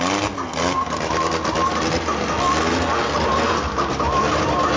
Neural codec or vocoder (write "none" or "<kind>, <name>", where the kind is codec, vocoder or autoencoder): none